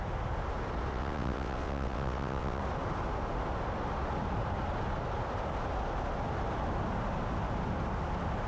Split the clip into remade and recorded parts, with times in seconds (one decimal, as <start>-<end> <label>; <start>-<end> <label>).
0.0-0.9 recorded; 0.9-2.6 remade; 2.6-8.5 recorded